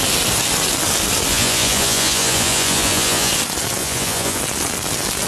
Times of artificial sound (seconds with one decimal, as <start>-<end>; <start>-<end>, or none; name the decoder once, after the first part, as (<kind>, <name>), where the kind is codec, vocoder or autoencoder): 1.3-3.3 (vocoder, Vocos); 3.8-4.4